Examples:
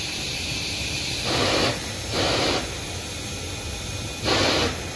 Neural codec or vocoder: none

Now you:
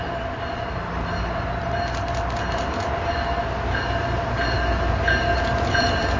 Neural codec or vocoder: none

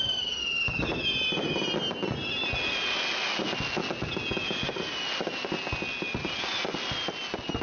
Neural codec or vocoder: none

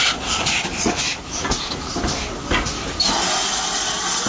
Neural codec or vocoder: none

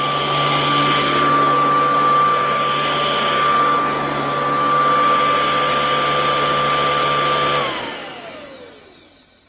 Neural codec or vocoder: none